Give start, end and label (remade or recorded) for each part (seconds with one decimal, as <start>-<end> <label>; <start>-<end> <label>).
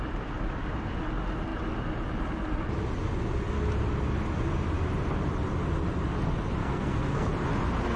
0.0-6.6 recorded; 6.6-7.3 remade; 7.3-8.0 recorded